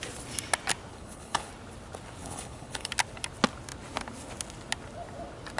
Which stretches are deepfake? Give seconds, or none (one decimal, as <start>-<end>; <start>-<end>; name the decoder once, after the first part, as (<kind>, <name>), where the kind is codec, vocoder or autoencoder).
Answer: 0.9-1.5 (codec, HILCodec); 2.2-2.9